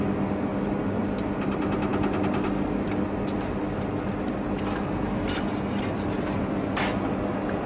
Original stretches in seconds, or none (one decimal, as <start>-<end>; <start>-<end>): 0.0-7.7